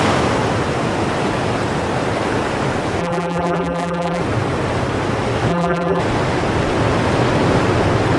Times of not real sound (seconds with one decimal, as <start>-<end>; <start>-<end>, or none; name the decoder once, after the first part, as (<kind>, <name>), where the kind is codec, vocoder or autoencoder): 3.0-4.2 (vocoder, BigVGAN v2); 5.5-6.0